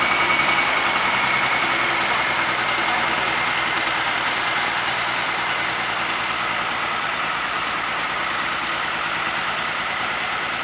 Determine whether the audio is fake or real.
real